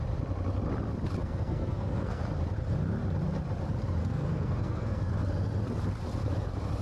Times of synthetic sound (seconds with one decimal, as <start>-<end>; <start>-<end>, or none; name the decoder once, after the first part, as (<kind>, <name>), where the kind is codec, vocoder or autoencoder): 1.2-2.2 (codec, SNAC); 4.0-5.1